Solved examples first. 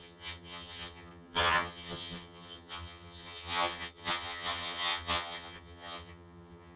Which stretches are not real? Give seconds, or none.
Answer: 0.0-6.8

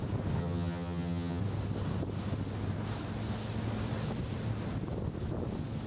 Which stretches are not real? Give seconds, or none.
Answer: 0.4-1.4